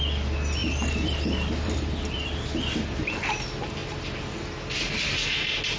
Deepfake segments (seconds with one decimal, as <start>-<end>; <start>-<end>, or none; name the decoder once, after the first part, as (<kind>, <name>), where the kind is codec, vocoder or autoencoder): 0.6-3.2 (vocoder, BigVGAN v2)